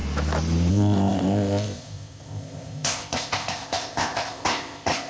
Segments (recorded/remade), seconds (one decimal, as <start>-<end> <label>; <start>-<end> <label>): 0.0-0.7 recorded; 0.7-5.1 remade